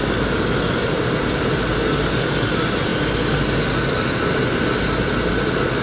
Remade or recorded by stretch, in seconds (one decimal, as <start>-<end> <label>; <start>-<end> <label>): 0.0-5.8 recorded